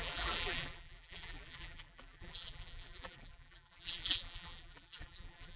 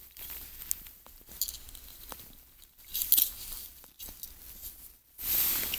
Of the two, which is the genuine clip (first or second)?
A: second